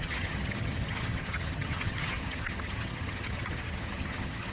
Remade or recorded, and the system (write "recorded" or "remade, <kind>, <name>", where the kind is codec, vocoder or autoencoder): remade, vocoder, HiFi-GAN